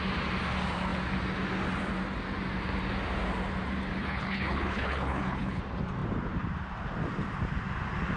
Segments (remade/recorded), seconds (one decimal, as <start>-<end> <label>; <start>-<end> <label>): 0.0-4.0 recorded; 4.0-5.6 remade; 5.6-8.2 recorded

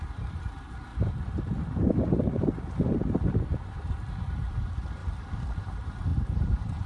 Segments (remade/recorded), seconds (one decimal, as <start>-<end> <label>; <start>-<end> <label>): 0.0-0.9 remade; 0.9-1.6 recorded; 1.6-5.0 remade; 5.0-5.6 recorded; 5.6-6.9 remade

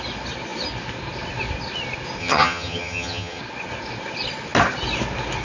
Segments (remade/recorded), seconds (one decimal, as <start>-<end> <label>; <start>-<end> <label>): 0.0-2.2 recorded; 2.2-3.4 remade; 3.4-5.4 recorded

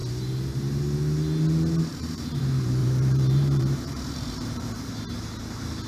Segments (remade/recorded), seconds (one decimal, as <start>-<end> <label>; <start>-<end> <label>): 0.0-1.9 recorded; 1.9-2.4 remade; 2.4-2.8 recorded; 2.8-4.9 remade; 4.9-5.9 recorded